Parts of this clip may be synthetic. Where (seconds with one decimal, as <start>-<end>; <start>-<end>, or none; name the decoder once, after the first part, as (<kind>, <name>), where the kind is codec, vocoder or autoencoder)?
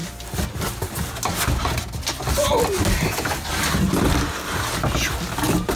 none